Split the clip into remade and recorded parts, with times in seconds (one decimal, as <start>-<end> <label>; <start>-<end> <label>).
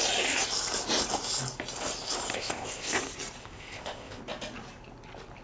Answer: 0.0-2.3 recorded; 2.3-3.0 remade; 3.0-3.4 recorded; 3.4-4.2 remade; 4.2-5.4 recorded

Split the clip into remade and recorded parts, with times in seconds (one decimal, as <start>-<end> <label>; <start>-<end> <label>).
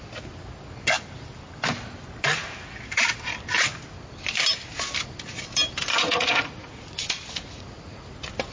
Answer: 0.0-5.9 recorded; 5.9-8.0 remade; 8.0-8.5 recorded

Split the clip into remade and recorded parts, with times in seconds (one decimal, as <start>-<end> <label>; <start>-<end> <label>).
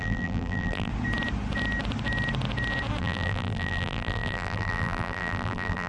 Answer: 0.0-0.9 remade; 0.9-3.0 recorded; 3.0-5.9 remade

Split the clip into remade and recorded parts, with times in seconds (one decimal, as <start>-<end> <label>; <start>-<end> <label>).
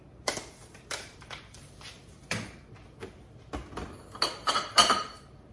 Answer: 0.0-3.0 remade; 3.0-4.5 recorded; 4.5-5.5 remade